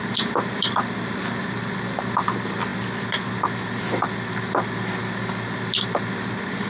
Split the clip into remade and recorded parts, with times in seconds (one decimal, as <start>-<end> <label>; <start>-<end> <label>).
0.0-6.7 recorded